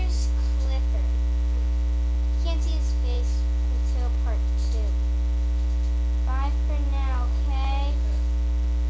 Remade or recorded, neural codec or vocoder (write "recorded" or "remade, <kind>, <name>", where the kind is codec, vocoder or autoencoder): recorded